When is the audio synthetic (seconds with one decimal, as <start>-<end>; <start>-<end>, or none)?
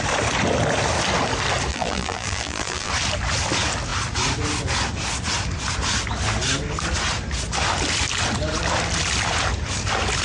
1.7-2.9